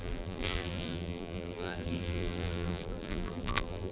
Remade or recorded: remade